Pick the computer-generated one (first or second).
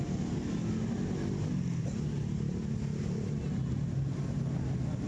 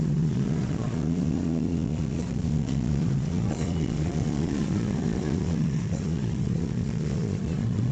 second